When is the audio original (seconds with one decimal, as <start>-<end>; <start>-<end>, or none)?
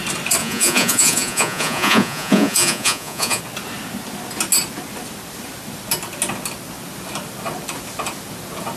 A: 0.0-0.4; 3.4-8.8